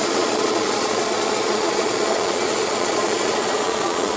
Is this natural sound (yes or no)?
no